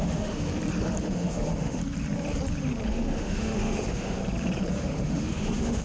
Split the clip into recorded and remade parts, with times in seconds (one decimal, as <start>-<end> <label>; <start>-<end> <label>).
0.0-0.5 remade; 0.5-1.0 recorded; 1.0-1.8 remade; 1.8-2.9 recorded; 2.9-4.2 remade; 4.2-4.7 recorded; 4.7-5.8 remade